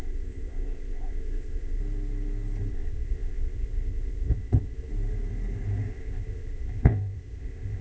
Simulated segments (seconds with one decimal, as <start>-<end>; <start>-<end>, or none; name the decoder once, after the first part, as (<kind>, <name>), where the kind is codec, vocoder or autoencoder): 0.0-1.8 (codec, ZipCodec); 2.7-4.9; 5.9-7.8